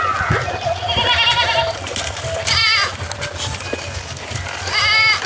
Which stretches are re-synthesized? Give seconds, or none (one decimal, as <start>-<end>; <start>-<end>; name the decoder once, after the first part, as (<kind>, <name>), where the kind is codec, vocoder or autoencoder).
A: none

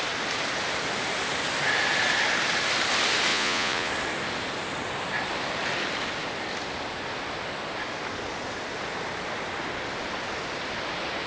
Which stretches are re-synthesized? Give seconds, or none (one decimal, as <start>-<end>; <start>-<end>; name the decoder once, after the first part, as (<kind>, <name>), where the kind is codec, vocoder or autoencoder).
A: 3.3-3.9 (vocoder, Vocos)

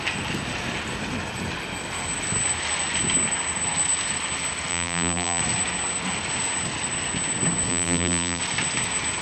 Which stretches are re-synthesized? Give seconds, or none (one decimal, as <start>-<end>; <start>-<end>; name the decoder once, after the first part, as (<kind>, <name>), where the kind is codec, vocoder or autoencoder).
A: 4.7-5.4 (vocoder, BigVGAN v2); 7.7-8.4

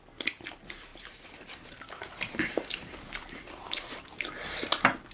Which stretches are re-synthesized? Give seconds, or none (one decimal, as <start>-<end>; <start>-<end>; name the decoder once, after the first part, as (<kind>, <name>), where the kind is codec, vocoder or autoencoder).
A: 0.9-4.0 (vocoder, BigVGAN v2)

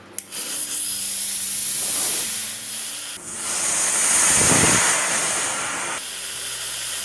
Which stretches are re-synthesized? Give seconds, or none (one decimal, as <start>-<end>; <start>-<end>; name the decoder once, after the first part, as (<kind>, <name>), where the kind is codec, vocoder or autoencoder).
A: none

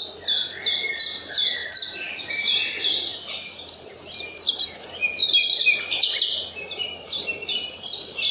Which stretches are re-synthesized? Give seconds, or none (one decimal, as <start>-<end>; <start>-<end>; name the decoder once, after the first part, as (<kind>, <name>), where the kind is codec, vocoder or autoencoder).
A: 1.6-2.3 (vocoder, BigVGAN v2); 3.1-3.9; 5.2-5.9; 7.5-8.3

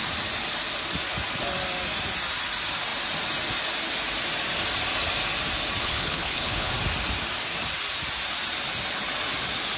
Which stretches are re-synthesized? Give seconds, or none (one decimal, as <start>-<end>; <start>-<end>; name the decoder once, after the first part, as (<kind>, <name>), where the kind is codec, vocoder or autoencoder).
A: 5.8-6.7 (codec, HILCodec)

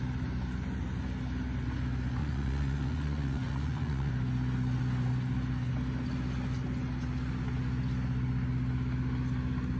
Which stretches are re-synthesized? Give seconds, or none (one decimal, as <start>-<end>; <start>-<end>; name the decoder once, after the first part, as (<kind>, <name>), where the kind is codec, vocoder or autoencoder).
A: 2.2-4.1 (vocoder, Vocos)